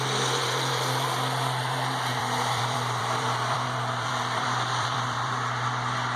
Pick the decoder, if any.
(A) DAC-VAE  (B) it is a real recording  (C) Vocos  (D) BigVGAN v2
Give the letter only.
D